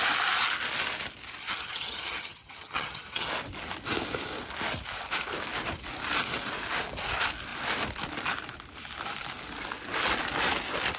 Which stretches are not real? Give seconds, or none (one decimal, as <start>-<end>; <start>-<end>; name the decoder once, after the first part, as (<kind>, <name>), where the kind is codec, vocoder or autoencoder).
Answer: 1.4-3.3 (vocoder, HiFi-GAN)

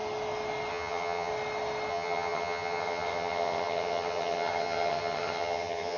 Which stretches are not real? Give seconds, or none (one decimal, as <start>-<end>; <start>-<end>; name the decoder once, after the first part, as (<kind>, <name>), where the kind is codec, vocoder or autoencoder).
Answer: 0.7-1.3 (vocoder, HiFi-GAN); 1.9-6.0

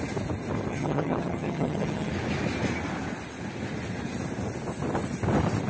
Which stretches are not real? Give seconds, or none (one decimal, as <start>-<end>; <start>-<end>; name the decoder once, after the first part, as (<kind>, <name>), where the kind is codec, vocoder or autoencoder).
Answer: 0.7-2.1 (vocoder, HiFi-GAN)

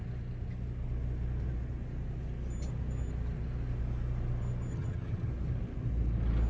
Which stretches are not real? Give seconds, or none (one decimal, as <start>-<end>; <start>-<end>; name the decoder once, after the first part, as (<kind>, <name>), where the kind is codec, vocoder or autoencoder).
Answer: 4.7-5.3 (vocoder, HiFi-GAN)